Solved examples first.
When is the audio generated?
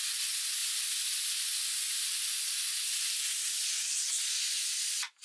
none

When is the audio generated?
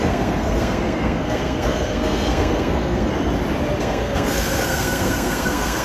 0.0-3.1 (codec, SNAC); 3.8-5.8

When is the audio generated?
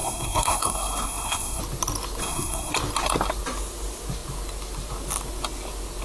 0.0-1.6 (codec, SNAC); 2.2-2.7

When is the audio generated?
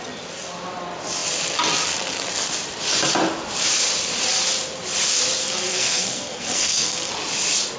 5.4-7.1 (codec, SNAC)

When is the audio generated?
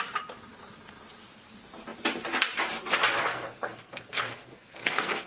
3.3-5.3 (codec, SNAC)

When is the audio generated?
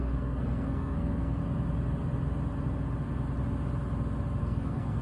0.0-1.4 (codec, SNAC); 4.4-5.0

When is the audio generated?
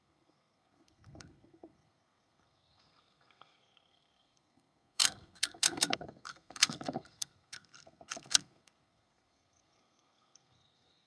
0.0-11.1 (codec, SNAC)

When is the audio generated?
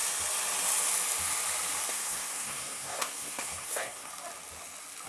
1.9-4.1 (codec, SNAC)